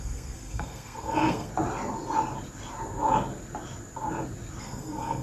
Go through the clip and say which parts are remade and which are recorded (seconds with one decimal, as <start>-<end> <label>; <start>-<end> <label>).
0.0-1.5 remade; 1.5-4.6 recorded; 4.6-5.2 remade